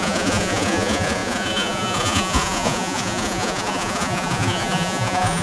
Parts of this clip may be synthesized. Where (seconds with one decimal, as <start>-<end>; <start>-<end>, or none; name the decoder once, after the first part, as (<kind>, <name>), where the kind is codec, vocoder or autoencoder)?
0.0-5.4 (vocoder, Vocos)